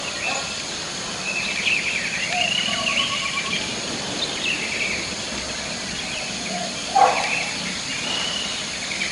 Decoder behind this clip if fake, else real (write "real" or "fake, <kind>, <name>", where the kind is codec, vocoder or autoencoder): fake, vocoder, BigVGAN v2